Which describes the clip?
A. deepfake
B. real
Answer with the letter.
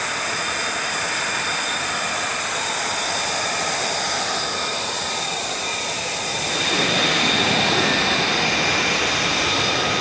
B